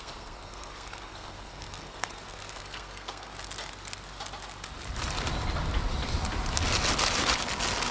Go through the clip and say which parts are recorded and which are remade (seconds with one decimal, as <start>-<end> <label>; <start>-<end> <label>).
0.0-3.3 remade; 3.3-7.9 recorded